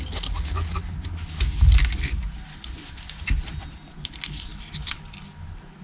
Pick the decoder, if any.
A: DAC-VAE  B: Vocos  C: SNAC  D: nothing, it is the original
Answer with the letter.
D